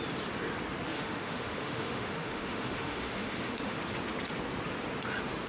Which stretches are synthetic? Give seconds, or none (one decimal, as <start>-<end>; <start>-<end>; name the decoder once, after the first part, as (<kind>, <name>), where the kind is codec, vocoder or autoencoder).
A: 0.9-3.8 (autoencoder, DAC-VAE)